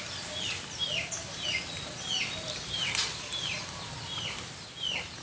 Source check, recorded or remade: recorded